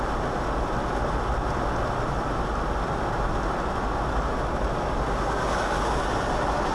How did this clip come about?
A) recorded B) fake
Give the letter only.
A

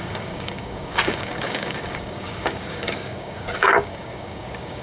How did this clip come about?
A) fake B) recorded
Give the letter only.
A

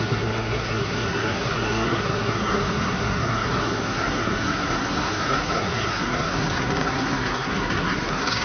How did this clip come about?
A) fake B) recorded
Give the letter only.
A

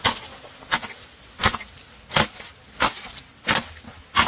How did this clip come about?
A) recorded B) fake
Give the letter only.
A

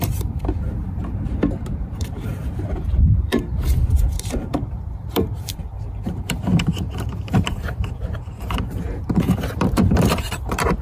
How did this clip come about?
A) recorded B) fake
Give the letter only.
B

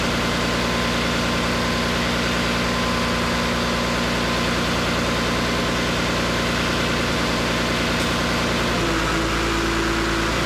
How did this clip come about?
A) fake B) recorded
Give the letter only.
B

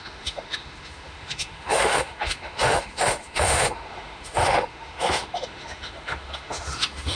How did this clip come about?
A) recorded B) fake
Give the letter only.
B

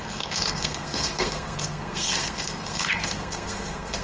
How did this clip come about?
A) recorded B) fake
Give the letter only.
B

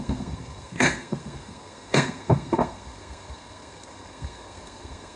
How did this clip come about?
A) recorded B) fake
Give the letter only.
B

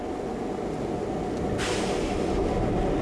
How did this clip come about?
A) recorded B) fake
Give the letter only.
A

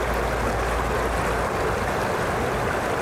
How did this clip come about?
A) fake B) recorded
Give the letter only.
B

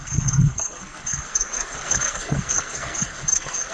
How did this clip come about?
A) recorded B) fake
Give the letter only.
B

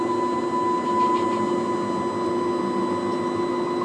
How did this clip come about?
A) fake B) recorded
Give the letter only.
B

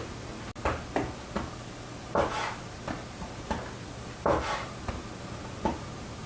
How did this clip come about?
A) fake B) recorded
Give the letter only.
B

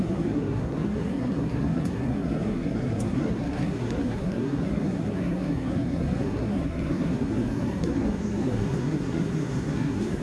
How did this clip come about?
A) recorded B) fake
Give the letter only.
B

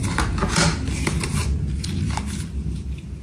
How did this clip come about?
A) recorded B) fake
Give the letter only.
A